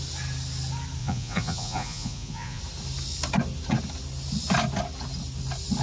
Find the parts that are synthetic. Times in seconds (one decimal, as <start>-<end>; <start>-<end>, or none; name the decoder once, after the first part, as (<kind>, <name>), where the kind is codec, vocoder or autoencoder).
1.0-2.6 (vocoder, Vocos)